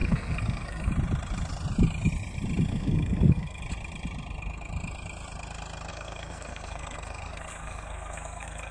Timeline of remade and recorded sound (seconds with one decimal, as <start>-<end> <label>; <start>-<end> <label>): 0.0-0.9 remade; 0.9-2.7 recorded; 2.7-3.6 remade; 3.6-5.9 recorded; 5.9-8.7 remade